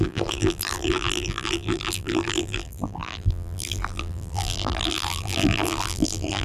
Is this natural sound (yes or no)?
no